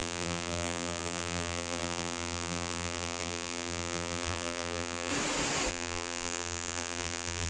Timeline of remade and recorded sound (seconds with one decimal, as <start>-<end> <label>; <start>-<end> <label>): 0.0-5.1 remade; 5.1-5.7 recorded; 5.7-7.5 remade